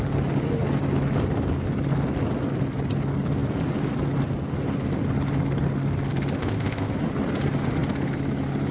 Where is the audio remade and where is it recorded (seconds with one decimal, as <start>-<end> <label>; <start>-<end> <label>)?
0.0-6.4 recorded; 6.4-6.9 remade; 6.9-8.7 recorded